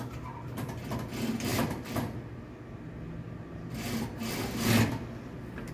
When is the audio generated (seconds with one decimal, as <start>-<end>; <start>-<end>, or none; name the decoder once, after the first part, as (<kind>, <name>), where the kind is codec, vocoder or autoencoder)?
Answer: 1.5-2.3 (vocoder, BigVGAN v2)